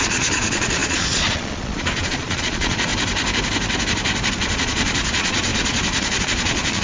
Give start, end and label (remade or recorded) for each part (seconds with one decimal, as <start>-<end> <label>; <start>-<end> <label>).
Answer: 0.0-2.9 remade; 2.9-4.4 recorded; 4.4-6.8 remade